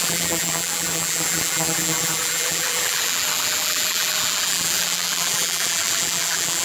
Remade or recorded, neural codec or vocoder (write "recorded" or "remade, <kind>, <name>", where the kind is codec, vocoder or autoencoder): remade, vocoder, BigVGAN v2